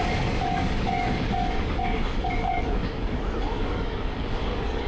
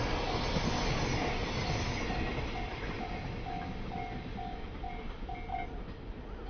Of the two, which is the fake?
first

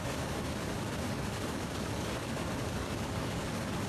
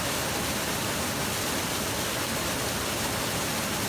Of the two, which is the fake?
first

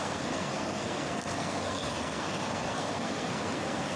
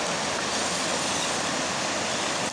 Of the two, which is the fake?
first